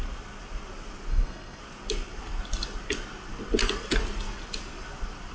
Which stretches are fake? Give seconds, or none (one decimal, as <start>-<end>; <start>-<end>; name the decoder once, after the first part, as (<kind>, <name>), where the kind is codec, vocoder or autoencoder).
1.1-1.6 (codec, SNAC)

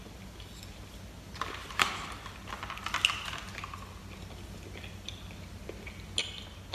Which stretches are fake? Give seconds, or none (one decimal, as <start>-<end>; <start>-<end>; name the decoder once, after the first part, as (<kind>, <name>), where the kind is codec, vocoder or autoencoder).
none

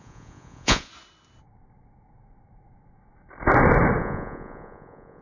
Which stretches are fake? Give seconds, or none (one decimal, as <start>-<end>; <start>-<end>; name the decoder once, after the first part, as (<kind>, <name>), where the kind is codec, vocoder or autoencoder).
0.0-0.9 (vocoder, Vocos); 4.0-5.2

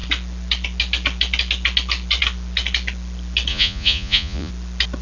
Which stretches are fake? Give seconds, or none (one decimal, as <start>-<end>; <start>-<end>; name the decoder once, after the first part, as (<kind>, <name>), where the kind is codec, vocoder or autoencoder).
3.5-4.5 (vocoder, Vocos)

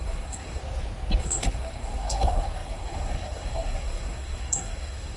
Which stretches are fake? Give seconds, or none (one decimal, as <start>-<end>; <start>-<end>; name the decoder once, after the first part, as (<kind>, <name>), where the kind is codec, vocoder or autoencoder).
0.0-0.6 (codec, SNAC); 1.2-5.2